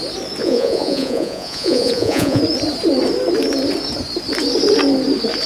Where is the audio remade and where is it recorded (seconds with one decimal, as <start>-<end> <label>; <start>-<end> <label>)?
0.0-0.4 recorded; 0.4-2.4 remade; 2.4-5.5 recorded